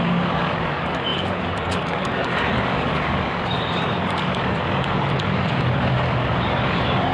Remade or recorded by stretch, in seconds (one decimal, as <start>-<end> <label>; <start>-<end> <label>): 0.0-7.1 remade